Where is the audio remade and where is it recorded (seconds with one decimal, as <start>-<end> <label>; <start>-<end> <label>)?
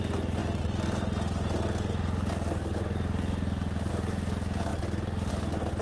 0.0-5.8 recorded